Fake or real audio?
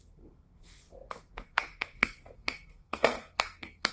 fake